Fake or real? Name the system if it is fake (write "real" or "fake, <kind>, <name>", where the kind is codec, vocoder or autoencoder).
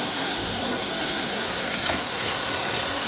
fake, codec, SNAC